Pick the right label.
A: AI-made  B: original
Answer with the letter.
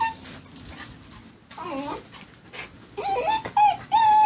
B